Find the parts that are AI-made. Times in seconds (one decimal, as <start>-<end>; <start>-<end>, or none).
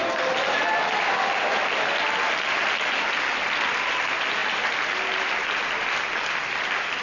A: none